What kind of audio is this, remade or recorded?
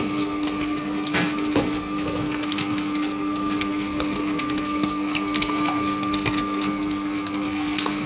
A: remade